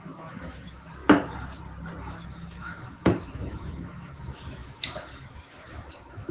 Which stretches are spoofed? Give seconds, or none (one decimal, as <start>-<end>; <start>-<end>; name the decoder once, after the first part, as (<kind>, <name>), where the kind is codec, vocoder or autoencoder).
0.0-1.0 (autoencoder, DAC-VAE); 2.1-6.3